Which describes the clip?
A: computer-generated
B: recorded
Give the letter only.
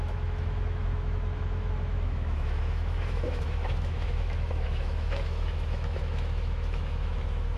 A